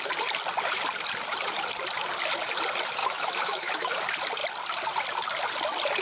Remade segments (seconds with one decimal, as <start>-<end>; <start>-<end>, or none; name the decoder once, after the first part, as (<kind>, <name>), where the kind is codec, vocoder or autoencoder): 3.0-3.9 (autoencoder, DAC-VAE)